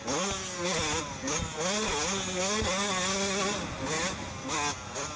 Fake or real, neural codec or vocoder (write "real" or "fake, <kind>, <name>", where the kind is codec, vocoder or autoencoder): real